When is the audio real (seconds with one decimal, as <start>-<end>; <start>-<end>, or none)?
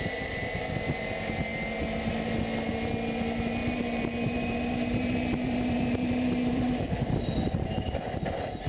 0.0-3.6; 7.3-8.7